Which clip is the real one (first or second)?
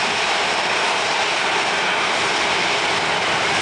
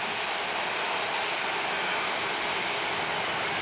second